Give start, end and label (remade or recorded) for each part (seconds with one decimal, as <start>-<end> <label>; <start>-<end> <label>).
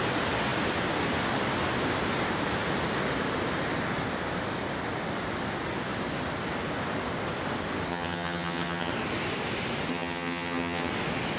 0.0-7.9 recorded; 7.9-8.9 remade; 8.9-9.9 recorded; 9.9-10.9 remade; 10.9-11.4 recorded